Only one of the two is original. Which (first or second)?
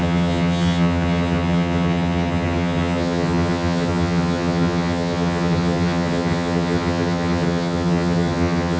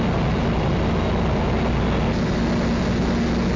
second